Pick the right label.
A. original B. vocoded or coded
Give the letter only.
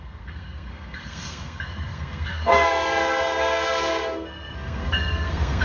B